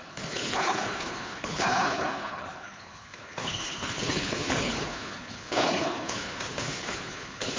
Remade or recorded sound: remade